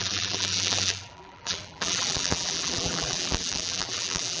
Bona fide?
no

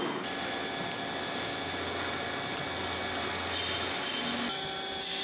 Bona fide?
yes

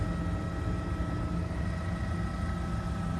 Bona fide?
yes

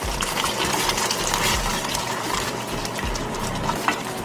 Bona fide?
no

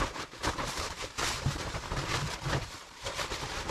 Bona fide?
no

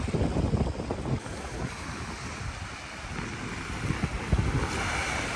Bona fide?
yes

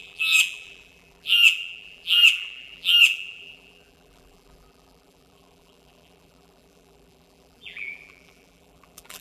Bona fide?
no